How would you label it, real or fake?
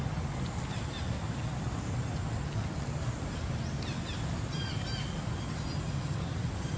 real